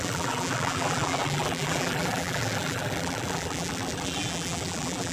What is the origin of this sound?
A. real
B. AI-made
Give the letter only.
B